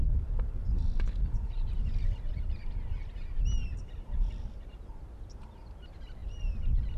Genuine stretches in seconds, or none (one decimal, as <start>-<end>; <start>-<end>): 0.0-0.6; 2.4-7.0